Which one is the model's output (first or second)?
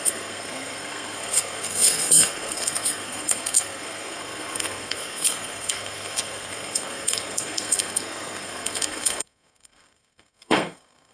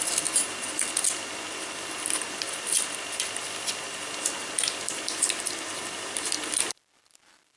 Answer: first